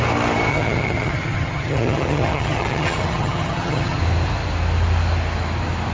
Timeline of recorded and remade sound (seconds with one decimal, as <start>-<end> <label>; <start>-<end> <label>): 0.0-0.5 recorded; 0.5-4.0 remade; 4.0-5.9 recorded